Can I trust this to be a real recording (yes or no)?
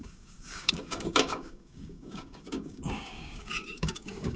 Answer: no